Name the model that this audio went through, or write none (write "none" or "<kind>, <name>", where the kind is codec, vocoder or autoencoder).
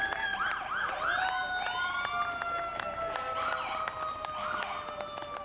none